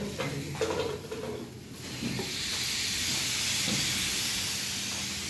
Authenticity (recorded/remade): recorded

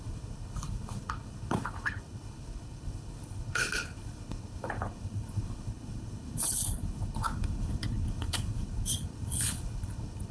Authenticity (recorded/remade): remade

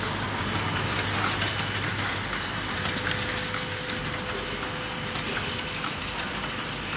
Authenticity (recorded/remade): recorded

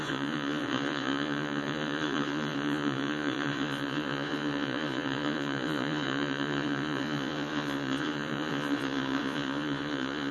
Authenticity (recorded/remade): remade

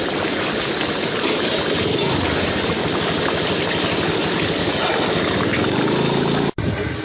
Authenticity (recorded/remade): recorded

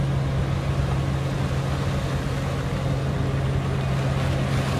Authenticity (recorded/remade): recorded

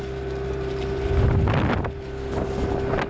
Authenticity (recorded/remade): recorded